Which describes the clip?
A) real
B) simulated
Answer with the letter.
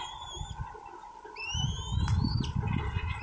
A